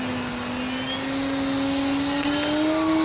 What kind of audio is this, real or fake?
real